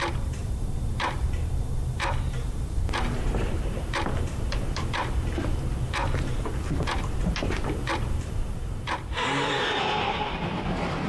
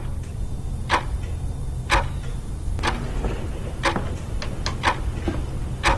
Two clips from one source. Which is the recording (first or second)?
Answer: second